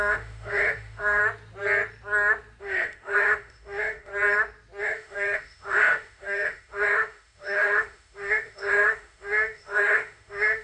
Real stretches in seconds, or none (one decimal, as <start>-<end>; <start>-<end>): 1.2-2.6; 4.1-4.8